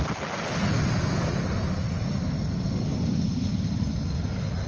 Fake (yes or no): no